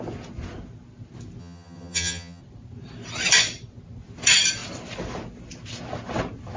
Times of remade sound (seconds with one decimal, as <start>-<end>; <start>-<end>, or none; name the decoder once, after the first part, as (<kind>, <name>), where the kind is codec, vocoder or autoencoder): 1.4-2.4 (vocoder, HiFi-GAN)